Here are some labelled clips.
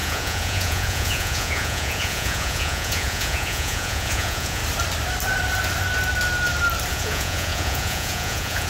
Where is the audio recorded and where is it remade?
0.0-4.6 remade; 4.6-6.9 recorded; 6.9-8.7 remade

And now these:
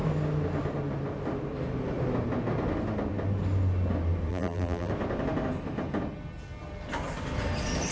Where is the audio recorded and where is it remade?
0.0-4.3 recorded; 4.3-4.9 remade; 4.9-7.9 recorded